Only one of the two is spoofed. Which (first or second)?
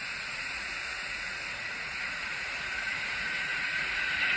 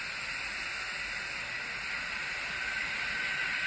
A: first